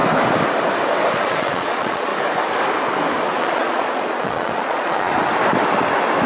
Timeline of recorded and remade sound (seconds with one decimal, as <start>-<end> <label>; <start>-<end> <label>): 0.0-1.2 recorded; 1.2-2.1 remade; 2.1-3.4 recorded; 3.4-5.1 remade; 5.1-6.3 recorded

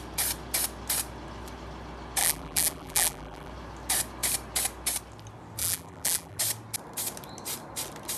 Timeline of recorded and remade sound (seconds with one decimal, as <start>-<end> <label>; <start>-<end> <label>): 0.0-2.2 recorded; 2.2-3.5 remade; 3.5-5.6 recorded; 5.6-6.4 remade; 6.4-8.2 recorded